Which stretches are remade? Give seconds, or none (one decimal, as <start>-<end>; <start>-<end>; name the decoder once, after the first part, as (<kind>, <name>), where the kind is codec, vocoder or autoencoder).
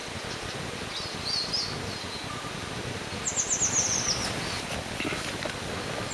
none